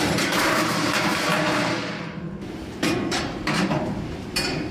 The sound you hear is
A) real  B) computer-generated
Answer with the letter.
B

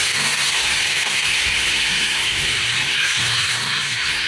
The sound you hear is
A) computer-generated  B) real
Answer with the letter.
A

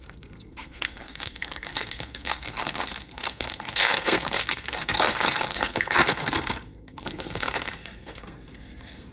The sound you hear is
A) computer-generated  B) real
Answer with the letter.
A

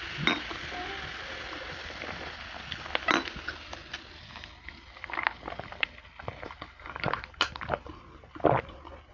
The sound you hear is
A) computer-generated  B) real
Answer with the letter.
B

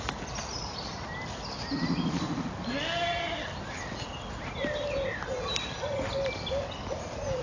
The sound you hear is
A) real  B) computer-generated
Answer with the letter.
A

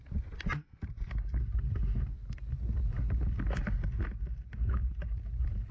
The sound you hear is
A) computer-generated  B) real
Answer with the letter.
B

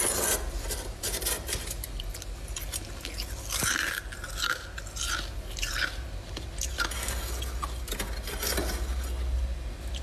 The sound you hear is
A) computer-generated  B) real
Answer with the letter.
B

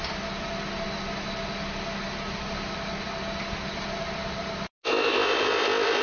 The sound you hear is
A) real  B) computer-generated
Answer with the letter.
A